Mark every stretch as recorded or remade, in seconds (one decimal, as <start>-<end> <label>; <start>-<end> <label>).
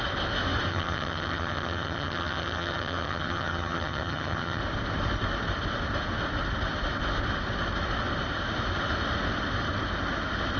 0.0-0.7 recorded; 0.7-4.6 remade; 4.6-10.6 recorded